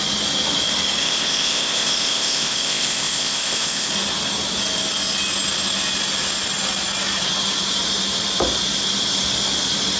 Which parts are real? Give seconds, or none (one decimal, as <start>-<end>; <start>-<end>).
0.0-1.0; 3.9-10.0